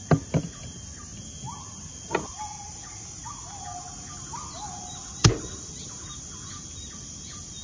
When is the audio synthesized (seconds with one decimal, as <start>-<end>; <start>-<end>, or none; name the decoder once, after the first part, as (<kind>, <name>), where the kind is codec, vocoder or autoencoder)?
none